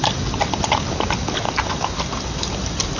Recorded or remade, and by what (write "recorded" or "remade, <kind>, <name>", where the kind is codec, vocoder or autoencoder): recorded